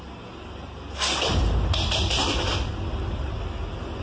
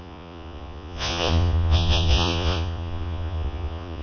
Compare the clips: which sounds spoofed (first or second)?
second